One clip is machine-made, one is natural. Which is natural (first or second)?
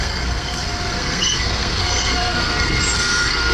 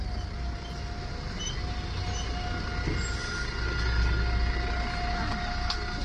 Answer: second